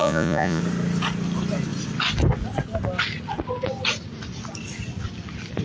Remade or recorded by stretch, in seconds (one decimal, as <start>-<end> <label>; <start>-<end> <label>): 0.0-0.6 remade; 0.6-5.6 recorded